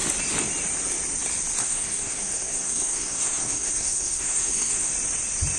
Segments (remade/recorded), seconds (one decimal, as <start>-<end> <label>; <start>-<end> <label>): 0.0-1.6 recorded; 1.6-4.9 remade; 4.9-5.6 recorded